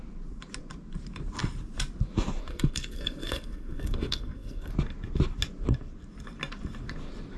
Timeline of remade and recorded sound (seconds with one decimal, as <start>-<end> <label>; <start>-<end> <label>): 0.0-2.5 recorded; 2.5-4.7 remade; 4.7-7.4 recorded